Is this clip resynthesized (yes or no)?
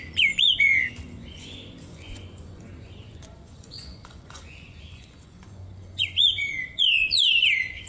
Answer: yes